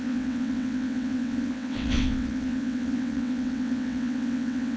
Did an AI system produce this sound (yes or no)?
yes